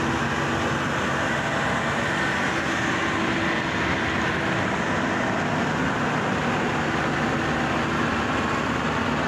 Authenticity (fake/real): real